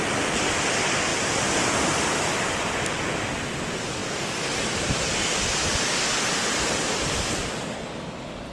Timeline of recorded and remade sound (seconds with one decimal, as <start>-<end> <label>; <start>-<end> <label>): 0.0-8.5 recorded